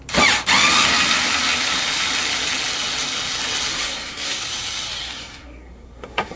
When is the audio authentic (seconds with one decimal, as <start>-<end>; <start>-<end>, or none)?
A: 0.0-3.7; 4.4-5.0